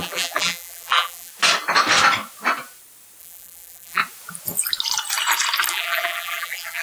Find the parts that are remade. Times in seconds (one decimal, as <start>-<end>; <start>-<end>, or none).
0.0-1.3; 3.2-4.0; 5.7-6.8

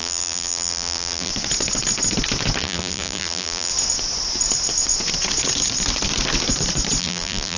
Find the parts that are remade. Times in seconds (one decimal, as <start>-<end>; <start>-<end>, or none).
0.0-1.3; 2.6-3.7; 7.0-7.6

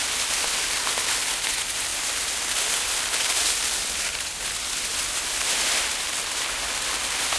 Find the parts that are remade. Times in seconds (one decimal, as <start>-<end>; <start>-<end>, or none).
0.0-0.8